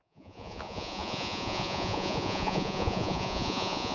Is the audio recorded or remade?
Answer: remade